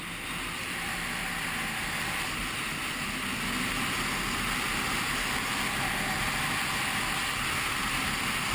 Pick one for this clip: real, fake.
real